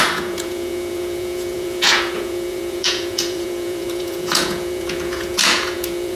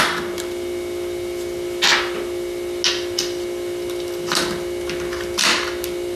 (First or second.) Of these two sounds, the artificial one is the first